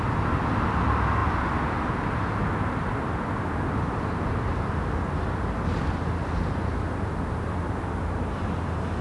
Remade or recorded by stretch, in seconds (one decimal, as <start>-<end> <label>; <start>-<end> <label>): 0.0-9.0 recorded